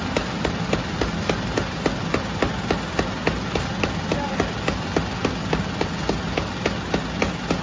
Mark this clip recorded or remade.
recorded